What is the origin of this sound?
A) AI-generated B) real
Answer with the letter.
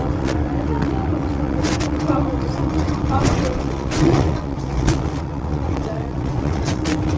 A